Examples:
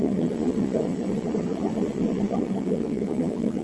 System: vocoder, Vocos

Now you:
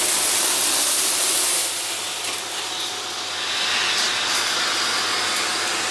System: none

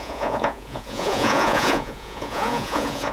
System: vocoder, Vocos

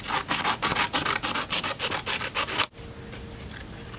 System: none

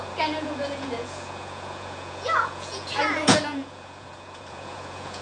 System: vocoder, Vocos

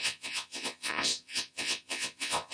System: vocoder, Vocos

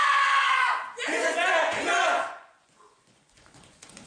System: vocoder, Vocos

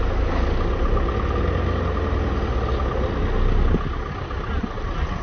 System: none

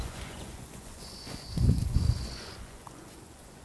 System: vocoder, Vocos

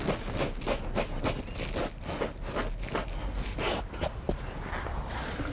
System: none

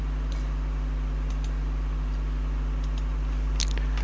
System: none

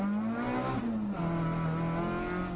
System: none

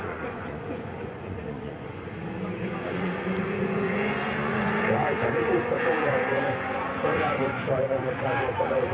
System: vocoder, Vocos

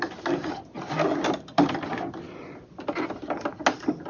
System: none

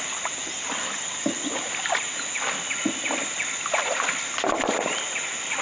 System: none